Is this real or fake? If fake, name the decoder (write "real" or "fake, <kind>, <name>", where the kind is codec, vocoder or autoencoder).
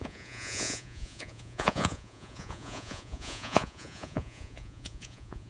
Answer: fake, vocoder, Vocos